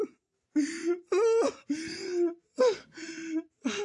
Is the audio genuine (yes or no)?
yes